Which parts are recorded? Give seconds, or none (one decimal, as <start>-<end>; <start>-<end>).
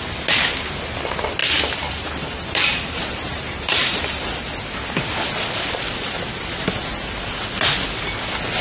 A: 0.0-1.4; 4.0-8.6